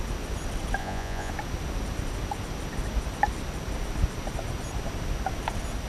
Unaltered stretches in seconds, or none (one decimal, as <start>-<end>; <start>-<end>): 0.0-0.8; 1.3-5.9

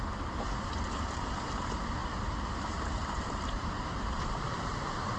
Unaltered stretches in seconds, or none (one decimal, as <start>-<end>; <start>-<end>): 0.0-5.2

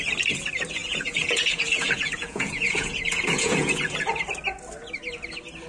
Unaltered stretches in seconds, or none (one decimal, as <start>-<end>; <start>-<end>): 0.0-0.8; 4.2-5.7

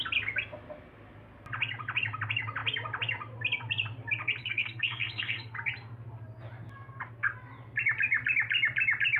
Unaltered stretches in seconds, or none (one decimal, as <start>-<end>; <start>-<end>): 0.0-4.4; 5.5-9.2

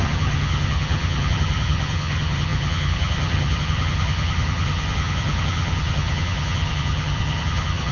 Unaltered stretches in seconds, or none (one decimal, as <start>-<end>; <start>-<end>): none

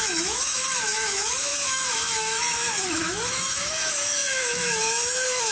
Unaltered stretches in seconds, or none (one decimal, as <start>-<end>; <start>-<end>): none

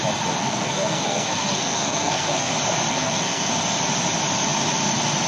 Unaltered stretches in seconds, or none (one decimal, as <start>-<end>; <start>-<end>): 0.0-0.4; 2.5-2.9; 3.5-5.3